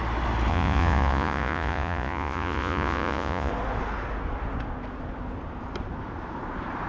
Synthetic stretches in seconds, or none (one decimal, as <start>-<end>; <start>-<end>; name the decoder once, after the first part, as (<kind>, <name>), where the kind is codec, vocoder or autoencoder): 0.5-3.5 (vocoder, Vocos)